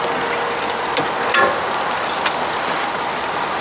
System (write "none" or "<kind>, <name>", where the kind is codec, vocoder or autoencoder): none